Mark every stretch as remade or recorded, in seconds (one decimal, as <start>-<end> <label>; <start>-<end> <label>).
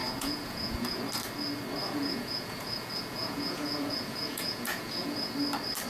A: 0.0-1.0 remade; 1.0-1.8 recorded; 1.8-5.3 remade; 5.3-5.9 recorded